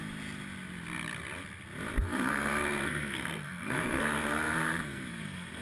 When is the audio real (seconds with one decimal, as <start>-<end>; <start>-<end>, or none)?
0.0-2.0